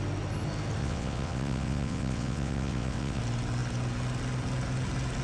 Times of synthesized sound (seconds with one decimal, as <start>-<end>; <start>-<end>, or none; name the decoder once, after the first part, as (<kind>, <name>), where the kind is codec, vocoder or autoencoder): 0.8-3.2 (vocoder, WaveNeXt)

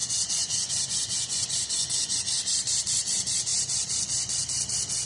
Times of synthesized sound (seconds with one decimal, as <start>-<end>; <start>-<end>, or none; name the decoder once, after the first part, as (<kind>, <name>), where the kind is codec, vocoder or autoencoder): 0.0-2.2 (vocoder, Vocos)